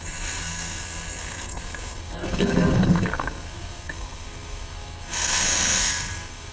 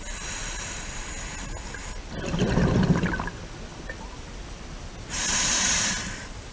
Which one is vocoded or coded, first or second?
first